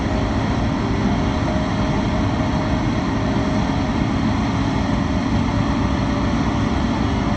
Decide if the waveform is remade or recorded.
recorded